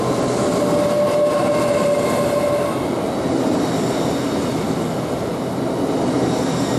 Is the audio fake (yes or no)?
no